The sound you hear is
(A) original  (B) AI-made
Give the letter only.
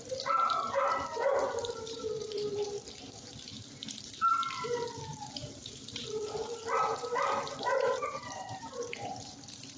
B